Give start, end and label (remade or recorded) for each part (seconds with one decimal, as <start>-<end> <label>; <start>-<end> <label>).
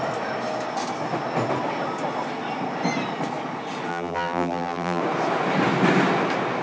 0.0-3.9 recorded; 3.9-5.0 remade; 5.0-6.6 recorded